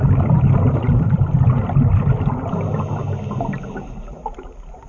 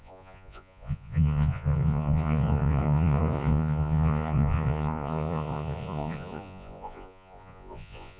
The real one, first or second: first